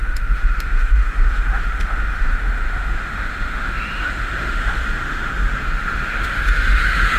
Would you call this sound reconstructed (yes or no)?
yes